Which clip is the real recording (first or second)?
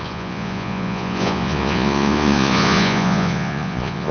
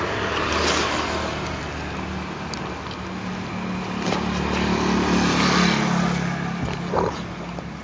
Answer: second